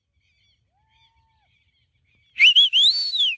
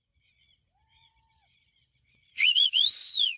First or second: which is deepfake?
second